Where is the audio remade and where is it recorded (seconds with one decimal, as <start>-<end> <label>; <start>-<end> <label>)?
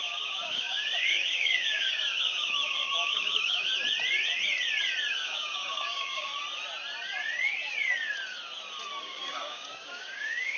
0.0-3.7 remade; 3.7-5.1 recorded; 5.1-6.3 remade; 6.3-9.0 recorded; 9.0-10.6 remade